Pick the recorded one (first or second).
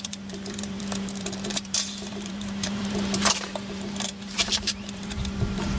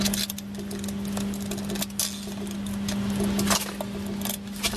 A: second